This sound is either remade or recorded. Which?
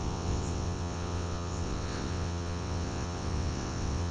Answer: remade